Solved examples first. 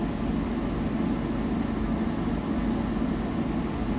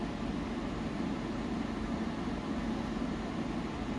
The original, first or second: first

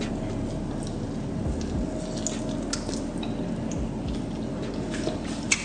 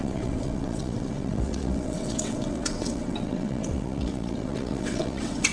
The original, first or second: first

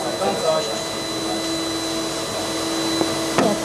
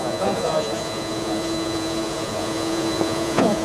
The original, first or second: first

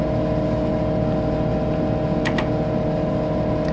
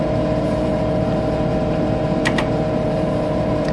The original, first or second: first